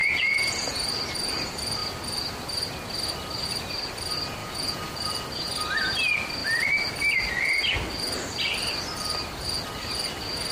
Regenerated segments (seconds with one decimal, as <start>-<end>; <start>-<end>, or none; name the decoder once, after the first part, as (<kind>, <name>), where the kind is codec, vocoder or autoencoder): 0.0-0.7 (vocoder, Vocos); 4.4-5.0

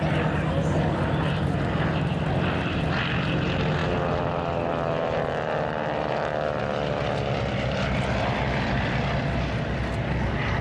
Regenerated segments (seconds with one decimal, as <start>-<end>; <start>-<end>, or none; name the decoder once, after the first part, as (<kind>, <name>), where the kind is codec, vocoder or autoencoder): none

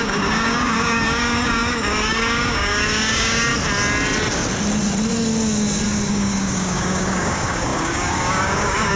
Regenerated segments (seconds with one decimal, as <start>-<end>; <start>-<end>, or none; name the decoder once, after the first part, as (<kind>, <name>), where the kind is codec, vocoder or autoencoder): 0.0-3.5 (codec, DAC); 6.1-9.0

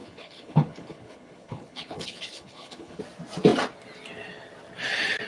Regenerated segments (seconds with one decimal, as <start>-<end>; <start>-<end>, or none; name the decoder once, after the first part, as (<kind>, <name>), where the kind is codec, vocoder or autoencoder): 0.0-3.0 (codec, HILCodec)

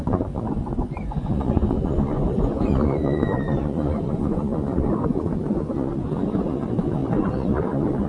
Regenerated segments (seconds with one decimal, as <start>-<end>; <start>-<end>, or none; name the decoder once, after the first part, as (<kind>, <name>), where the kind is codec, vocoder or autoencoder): 0.0-8.1 (vocoder, Vocos)

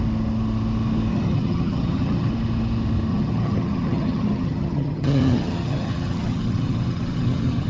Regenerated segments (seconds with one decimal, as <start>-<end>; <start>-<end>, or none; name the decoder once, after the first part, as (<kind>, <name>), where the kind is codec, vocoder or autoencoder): 1.1-2.3 (vocoder, HiFi-GAN); 3.1-7.7